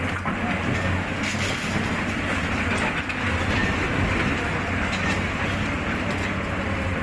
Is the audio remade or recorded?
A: recorded